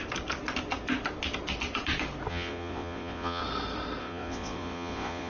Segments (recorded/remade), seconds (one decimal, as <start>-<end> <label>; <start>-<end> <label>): 0.0-2.3 recorded; 2.3-3.4 remade; 3.4-4.0 recorded; 4.0-5.3 remade